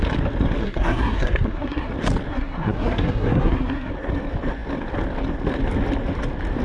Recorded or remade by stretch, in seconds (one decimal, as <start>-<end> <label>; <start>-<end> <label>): 0.0-0.6 recorded; 0.6-1.9 remade; 1.9-2.3 recorded; 2.3-3.9 remade; 3.9-6.6 recorded